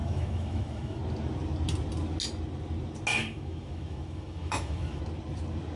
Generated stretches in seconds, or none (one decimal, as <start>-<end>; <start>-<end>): 0.0-1.0; 3.2-5.0